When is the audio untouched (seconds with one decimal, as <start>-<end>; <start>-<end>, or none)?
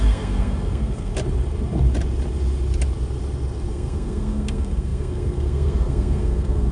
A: 1.1-3.7